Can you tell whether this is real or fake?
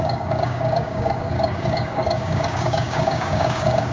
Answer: fake